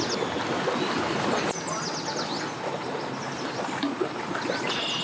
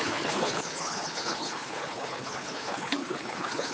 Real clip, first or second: first